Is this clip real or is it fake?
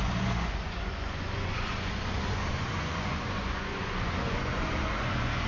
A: fake